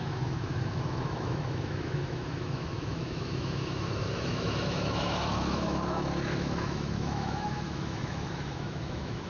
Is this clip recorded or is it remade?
remade